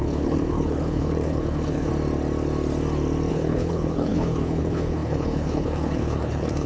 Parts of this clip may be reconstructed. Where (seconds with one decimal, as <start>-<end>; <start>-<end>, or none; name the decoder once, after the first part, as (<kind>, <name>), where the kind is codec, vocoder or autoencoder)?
0.0-1.9 (codec, HILCodec); 3.3-6.7